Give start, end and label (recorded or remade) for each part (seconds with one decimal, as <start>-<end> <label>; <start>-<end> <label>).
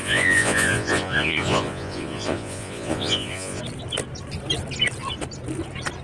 0.0-3.6 remade; 3.6-6.0 recorded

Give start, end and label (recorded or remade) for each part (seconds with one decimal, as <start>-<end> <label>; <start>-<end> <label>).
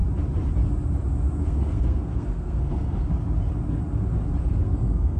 0.0-1.4 recorded; 1.4-3.1 remade; 3.1-4.4 recorded; 4.4-5.2 remade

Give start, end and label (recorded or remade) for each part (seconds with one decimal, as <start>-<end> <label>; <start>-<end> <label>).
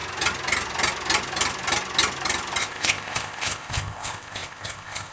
0.0-2.6 recorded; 2.6-5.1 remade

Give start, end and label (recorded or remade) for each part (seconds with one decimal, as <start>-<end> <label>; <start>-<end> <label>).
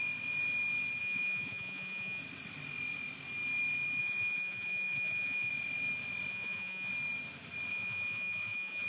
0.0-1.0 recorded; 1.0-2.2 remade; 2.2-4.0 recorded; 4.0-5.5 remade; 5.5-6.3 recorded; 6.3-6.9 remade; 6.9-7.7 recorded; 7.7-8.9 remade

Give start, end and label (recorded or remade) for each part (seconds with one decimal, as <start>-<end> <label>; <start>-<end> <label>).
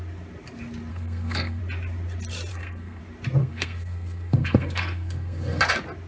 0.0-0.9 recorded; 0.9-1.6 remade; 1.6-2.5 recorded; 2.5-3.0 remade; 3.0-3.4 recorded; 3.4-5.6 remade; 5.6-6.1 recorded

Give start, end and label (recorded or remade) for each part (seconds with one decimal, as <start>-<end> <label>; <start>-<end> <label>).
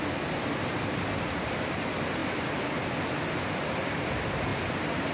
0.0-5.1 recorded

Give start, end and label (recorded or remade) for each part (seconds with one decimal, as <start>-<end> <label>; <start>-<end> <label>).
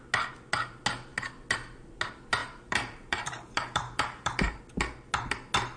0.0-2.4 recorded; 2.4-4.6 remade; 4.6-5.8 recorded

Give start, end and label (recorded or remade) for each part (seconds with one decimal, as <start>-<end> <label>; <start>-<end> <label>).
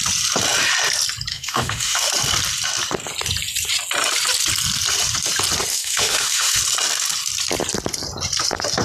0.0-1.3 recorded; 1.3-2.1 remade; 2.1-5.7 recorded; 5.7-6.6 remade; 6.6-8.8 recorded